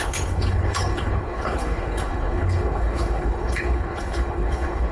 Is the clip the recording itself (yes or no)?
no